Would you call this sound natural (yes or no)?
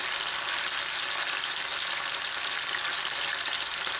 yes